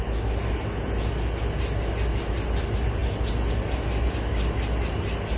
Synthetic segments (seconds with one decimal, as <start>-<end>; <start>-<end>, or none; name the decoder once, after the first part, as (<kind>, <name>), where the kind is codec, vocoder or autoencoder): none